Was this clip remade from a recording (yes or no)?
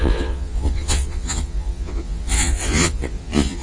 yes